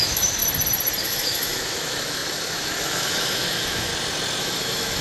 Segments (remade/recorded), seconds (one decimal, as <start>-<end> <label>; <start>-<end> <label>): 0.0-0.4 remade; 0.4-1.0 recorded; 1.0-3.9 remade; 3.9-4.4 recorded; 4.4-5.0 remade

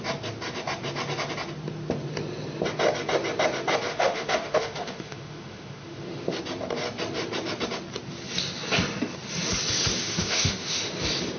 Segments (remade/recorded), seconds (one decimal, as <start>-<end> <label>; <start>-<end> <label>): 0.0-3.9 recorded; 3.9-6.4 remade; 6.4-10.0 recorded; 10.0-10.9 remade; 10.9-11.4 recorded

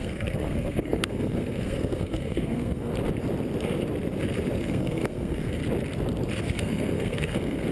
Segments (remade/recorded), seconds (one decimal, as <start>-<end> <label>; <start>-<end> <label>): 0.0-2.9 remade; 2.9-4.6 recorded; 4.6-5.6 remade; 5.6-6.4 recorded; 6.4-7.7 remade

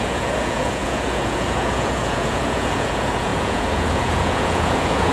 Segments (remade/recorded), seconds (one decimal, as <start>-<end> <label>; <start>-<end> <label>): 0.0-5.1 remade

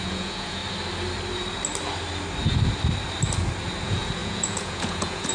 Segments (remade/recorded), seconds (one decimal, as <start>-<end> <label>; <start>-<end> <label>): 0.0-0.6 remade; 0.6-3.8 recorded; 3.8-5.3 remade

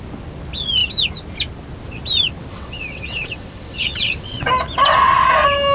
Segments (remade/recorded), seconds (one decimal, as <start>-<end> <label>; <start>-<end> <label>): 0.0-2.5 recorded; 2.5-4.4 remade; 4.4-5.7 recorded

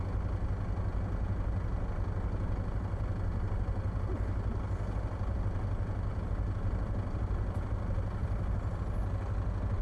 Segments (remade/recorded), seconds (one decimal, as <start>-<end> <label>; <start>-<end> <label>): 0.0-8.2 recorded; 8.2-8.8 remade; 8.8-9.8 recorded